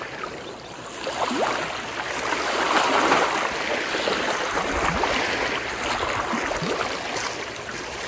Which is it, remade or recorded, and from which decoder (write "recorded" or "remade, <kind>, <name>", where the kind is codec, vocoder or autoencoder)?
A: recorded